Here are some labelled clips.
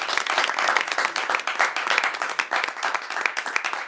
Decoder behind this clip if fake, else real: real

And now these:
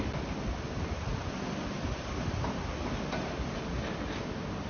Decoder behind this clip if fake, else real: real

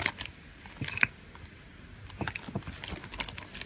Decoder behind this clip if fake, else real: real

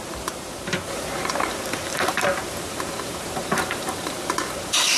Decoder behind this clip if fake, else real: fake, vocoder, BigVGAN v2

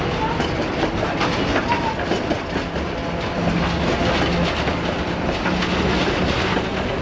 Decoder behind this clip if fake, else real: real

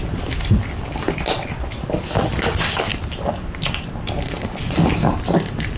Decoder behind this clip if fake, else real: real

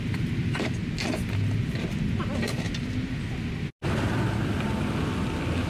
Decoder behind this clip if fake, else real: real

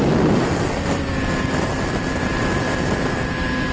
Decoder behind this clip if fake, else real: real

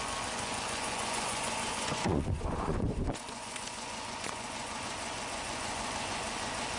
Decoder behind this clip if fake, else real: fake, vocoder, Vocos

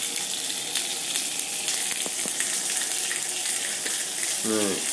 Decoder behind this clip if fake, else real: real